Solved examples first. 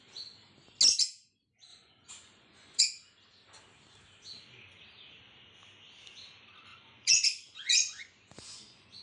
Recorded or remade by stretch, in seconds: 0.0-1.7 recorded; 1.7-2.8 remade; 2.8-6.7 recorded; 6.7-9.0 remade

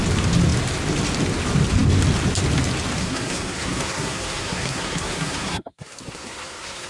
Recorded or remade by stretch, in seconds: 0.0-3.0 recorded; 3.0-6.9 remade